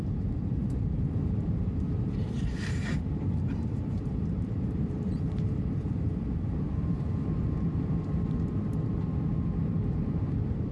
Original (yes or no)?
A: no